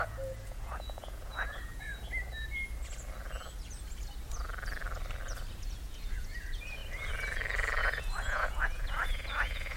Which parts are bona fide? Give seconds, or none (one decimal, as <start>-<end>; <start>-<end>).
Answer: 1.9-5.6; 6.8-7.8